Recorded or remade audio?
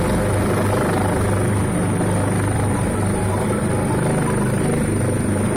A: recorded